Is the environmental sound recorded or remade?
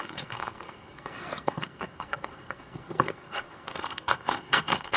remade